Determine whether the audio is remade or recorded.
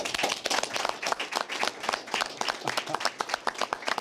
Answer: recorded